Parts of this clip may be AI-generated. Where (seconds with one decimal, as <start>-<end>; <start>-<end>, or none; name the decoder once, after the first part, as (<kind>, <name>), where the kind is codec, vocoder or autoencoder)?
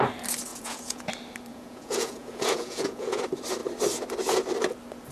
0.5-1.1 (vocoder, Vocos); 1.5-3.2